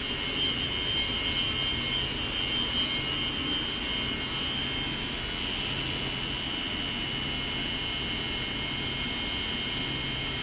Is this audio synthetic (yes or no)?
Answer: no